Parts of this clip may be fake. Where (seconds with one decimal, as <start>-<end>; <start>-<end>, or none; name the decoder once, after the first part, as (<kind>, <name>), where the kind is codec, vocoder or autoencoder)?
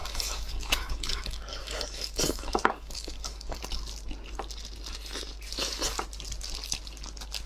0.0-3.6 (codec, DAC)